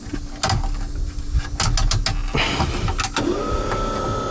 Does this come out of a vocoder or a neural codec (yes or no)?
no